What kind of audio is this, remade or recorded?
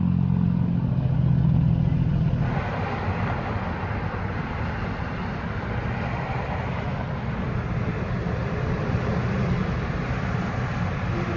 recorded